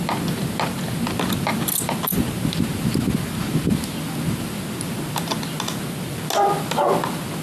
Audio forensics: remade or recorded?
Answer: recorded